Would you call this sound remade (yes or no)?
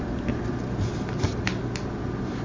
no